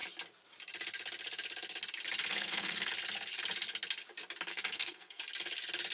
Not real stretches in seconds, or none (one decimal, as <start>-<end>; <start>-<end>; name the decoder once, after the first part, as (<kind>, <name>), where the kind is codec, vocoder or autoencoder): 2.3-2.9 (codec, SNAC); 4.5-5.2